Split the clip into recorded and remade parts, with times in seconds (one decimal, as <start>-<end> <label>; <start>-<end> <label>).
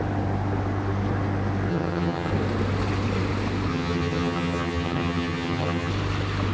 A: 0.0-1.7 recorded; 1.7-2.3 remade; 2.3-3.7 recorded; 3.7-5.9 remade; 5.9-6.5 recorded